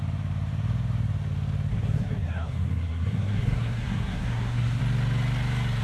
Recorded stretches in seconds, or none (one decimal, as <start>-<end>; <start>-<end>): 0.0-1.7; 4.8-5.8